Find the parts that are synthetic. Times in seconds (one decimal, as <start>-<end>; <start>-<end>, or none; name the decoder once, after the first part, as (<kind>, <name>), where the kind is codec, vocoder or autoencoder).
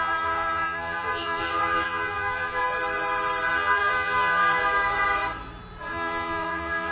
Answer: 0.0-2.6 (vocoder, BigVGAN v2); 3.5-4.6; 5.9-6.9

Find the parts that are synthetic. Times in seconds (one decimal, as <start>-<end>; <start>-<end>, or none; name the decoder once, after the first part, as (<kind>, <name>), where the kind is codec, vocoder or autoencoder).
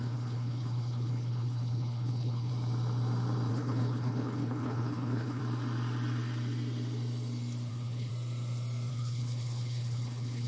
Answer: 0.0-2.5 (codec, HILCodec); 3.5-5.4; 7.7-8.1; 8.9-10.5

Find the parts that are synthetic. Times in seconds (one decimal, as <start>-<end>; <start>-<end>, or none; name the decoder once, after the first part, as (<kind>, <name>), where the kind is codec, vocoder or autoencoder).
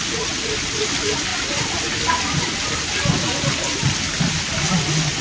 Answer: none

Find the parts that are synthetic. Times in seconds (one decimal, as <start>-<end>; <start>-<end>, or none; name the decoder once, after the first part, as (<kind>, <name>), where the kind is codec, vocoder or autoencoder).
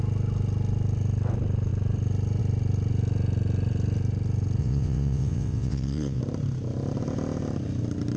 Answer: 4.6-6.2 (vocoder, WaveNeXt)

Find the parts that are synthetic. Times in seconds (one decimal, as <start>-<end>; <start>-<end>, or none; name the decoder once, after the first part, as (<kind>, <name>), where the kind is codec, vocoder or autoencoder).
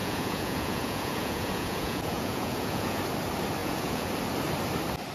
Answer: 0.0-3.0 (vocoder, Vocos); 3.6-4.1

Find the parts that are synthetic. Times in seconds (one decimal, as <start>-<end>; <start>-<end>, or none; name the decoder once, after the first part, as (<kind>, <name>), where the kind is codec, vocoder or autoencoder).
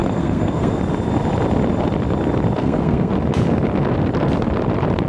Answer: 0.0-0.8 (codec, SNAC); 2.6-3.1